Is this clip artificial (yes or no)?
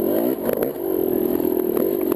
no